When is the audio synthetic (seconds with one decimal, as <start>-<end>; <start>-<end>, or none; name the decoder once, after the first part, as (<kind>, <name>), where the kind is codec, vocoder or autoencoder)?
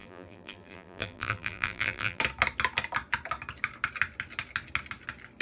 0.0-2.2 (vocoder, BigVGAN v2)